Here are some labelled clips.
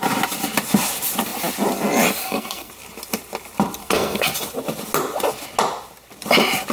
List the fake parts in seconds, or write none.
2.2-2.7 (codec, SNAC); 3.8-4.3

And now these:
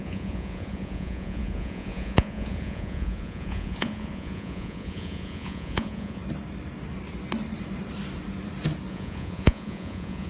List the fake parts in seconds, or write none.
0.0-6.2 (vocoder, Vocos); 8.9-10.3

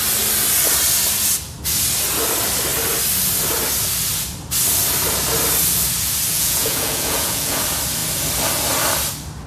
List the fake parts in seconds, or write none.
6.3-7.6 (vocoder, Vocos)

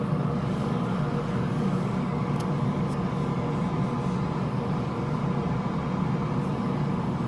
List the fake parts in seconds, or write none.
0.0-3.3 (codec, DAC); 4.4-5.2; 6.4-7.3

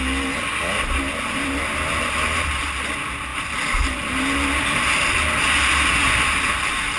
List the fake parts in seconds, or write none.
none

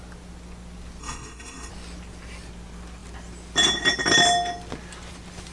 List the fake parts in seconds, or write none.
1.0-1.7 (codec, SNAC)

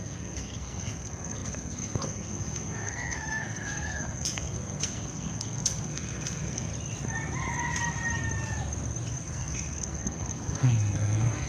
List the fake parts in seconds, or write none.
0.0-6.7 (codec, SNAC); 9.2-11.5